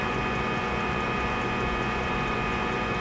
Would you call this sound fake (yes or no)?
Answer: yes